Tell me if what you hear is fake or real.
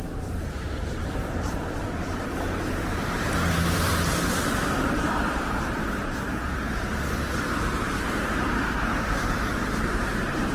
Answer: fake